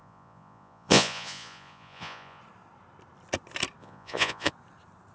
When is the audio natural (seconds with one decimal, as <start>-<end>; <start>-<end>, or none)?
2.4-3.8; 4.5-5.1